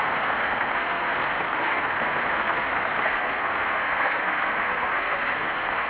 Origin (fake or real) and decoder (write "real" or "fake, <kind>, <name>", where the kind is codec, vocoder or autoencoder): fake, codec, SNAC